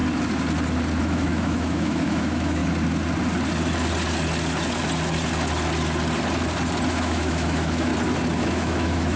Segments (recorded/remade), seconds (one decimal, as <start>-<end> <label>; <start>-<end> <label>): 0.0-1.0 recorded; 1.0-2.6 remade; 2.6-6.9 recorded; 6.9-7.9 remade; 7.9-8.4 recorded; 8.4-9.2 remade